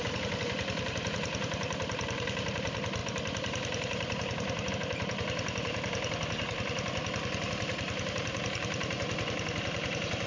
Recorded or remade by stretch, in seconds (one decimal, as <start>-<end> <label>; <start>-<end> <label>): 0.0-10.3 recorded